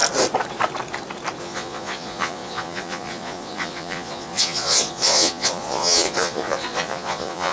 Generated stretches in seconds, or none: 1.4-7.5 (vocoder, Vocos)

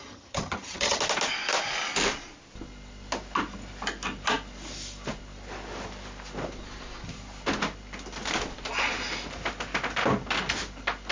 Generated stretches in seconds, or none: 0.0-1.0 (vocoder, HiFi-GAN)